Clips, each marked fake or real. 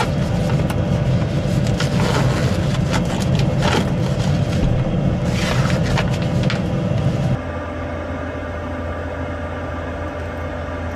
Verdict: real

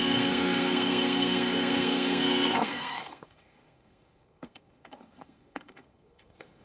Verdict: fake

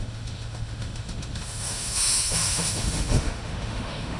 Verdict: fake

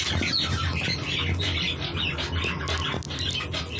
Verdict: real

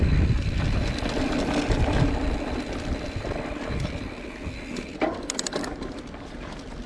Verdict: real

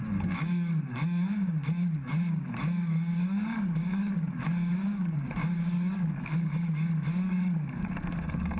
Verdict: fake